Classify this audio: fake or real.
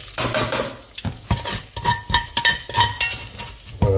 real